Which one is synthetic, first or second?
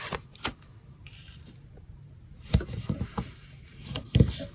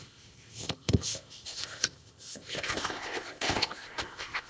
second